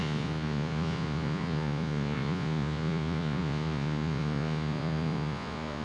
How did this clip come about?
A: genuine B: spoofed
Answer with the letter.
B